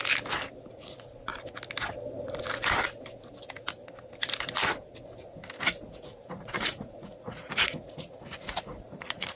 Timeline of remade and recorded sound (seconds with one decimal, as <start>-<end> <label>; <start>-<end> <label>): 0.0-0.7 recorded; 0.7-1.3 remade; 1.3-5.6 recorded; 5.6-9.4 remade